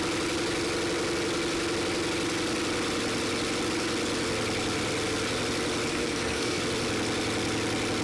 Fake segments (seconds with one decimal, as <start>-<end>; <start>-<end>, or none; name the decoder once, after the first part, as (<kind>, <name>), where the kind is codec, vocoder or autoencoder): 5.9-6.6 (codec, SNAC)

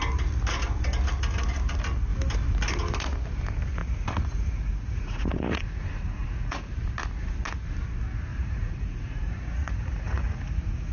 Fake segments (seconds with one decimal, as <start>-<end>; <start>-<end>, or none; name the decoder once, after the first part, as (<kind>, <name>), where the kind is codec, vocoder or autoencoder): 3.8-6.7 (vocoder, Vocos); 8.3-10.9

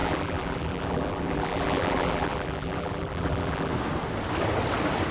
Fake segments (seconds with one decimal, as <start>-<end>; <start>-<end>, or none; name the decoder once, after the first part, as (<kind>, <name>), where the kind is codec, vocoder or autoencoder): 0.0-3.7 (vocoder, BigVGAN v2)